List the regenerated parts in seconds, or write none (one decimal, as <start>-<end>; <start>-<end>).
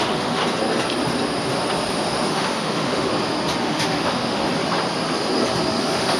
0.0-0.4; 2.3-3.1; 3.6-4.4; 5.8-6.2